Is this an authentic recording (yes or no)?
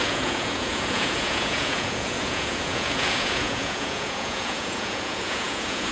no